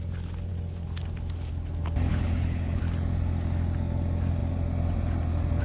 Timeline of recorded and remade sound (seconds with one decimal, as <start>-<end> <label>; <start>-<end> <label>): 0.0-2.1 recorded; 2.1-2.8 remade; 2.8-5.6 recorded